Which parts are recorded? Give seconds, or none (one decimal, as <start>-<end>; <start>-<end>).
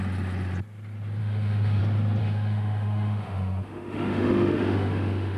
0.0-1.2; 1.8-2.2